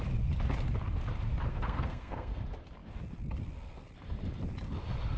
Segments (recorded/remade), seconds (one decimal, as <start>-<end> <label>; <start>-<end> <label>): 0.0-1.5 recorded; 1.5-2.4 remade; 2.4-5.2 recorded